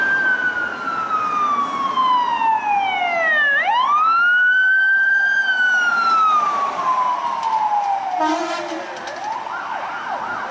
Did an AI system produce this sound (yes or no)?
no